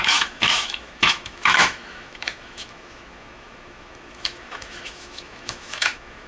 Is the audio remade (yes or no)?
yes